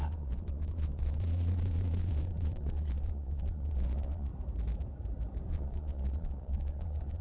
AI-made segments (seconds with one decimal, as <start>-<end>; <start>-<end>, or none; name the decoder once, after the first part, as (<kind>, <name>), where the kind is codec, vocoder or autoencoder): 0.0-4.3 (vocoder, Vocos); 5.5-7.2

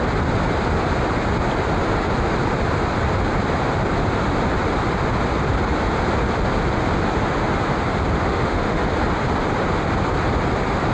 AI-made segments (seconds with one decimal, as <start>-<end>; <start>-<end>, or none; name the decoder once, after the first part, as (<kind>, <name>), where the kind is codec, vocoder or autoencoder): 8.3-8.8 (autoencoder, DAC-VAE)

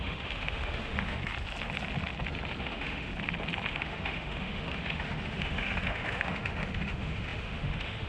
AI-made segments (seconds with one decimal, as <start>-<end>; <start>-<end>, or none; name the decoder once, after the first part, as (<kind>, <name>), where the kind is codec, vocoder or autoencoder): 0.0-1.2 (autoencoder, DAC-VAE); 2.6-3.1; 3.7-8.1

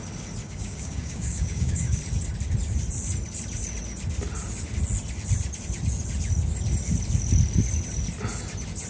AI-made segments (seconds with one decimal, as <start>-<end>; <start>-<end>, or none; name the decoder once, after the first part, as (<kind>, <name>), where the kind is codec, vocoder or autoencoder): 0.4-2.0 (codec, DAC)

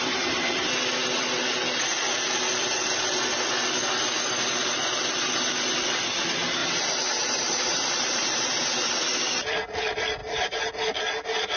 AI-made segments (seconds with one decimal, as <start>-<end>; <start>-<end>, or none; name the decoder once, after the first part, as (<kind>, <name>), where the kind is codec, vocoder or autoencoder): 6.6-8.9 (vocoder, BigVGAN v2); 10.2-10.7

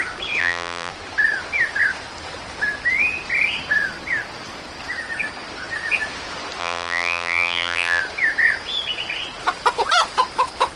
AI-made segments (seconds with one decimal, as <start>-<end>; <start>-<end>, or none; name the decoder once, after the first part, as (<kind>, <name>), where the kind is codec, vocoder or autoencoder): 0.4-0.9 (vocoder, BigVGAN v2); 6.6-8.0